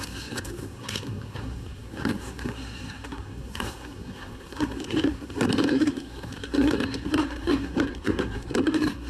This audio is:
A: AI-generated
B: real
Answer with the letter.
A